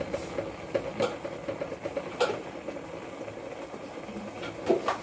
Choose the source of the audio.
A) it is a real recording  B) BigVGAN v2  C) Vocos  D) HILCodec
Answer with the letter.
A